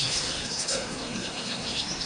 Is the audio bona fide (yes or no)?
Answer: no